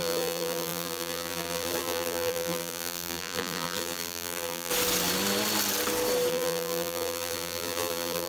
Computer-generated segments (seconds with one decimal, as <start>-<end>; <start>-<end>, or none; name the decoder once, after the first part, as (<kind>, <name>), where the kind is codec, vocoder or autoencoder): 0.0-4.7 (vocoder, BigVGAN v2); 6.3-8.3